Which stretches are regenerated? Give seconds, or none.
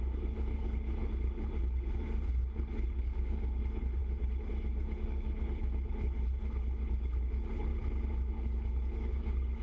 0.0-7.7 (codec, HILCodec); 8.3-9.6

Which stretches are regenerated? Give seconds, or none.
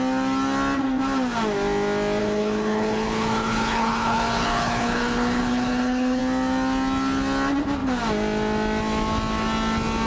2.2-6.2 (codec, HILCodec)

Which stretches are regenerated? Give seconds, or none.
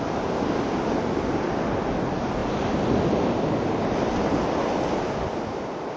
none